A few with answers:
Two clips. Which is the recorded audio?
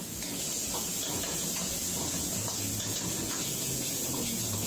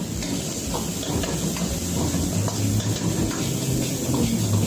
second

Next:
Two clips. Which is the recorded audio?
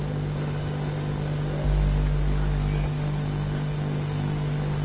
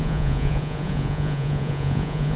first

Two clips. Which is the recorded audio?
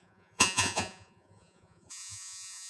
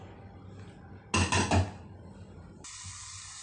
second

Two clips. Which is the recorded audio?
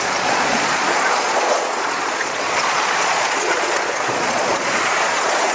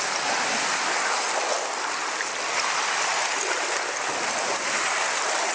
second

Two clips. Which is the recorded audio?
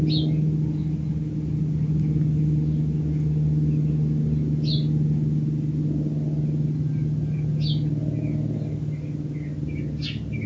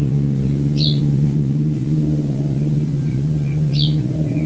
first